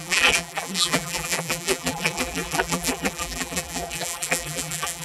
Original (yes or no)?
no